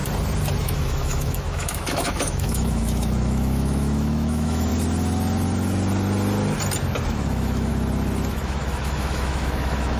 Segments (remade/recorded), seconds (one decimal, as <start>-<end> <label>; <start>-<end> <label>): 0.0-0.6 recorded; 0.6-4.7 remade; 4.7-7.1 recorded; 7.1-7.7 remade; 7.7-8.3 recorded; 8.3-10.0 remade